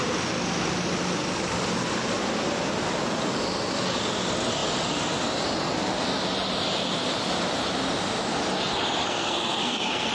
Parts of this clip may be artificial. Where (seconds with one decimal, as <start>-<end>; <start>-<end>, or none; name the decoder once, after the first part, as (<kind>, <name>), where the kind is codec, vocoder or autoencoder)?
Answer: 9.0-10.1 (codec, SNAC)